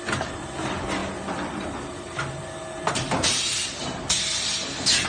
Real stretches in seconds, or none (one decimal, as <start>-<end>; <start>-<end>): 0.0-5.1